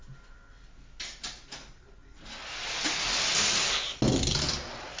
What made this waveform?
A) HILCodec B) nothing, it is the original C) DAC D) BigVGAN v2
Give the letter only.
B